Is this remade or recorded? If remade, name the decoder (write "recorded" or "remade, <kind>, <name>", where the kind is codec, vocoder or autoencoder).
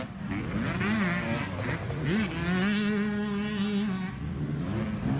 recorded